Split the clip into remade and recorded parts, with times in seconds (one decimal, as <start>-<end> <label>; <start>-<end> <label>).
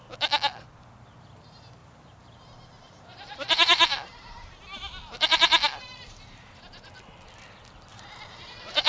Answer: 0.0-1.8 recorded; 1.8-6.6 remade; 6.6-7.9 recorded; 7.9-8.9 remade